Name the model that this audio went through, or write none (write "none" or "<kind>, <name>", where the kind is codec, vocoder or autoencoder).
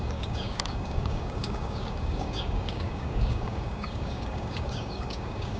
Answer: codec, DAC